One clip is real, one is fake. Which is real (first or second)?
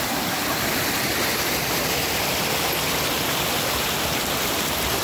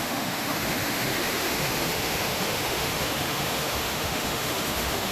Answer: first